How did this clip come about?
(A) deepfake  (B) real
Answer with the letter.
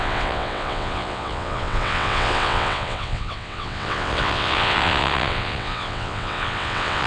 A